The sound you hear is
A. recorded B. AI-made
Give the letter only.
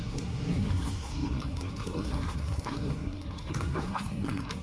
B